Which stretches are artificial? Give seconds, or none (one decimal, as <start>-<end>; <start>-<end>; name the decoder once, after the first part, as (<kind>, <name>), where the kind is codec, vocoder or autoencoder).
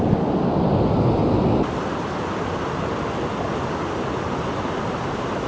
none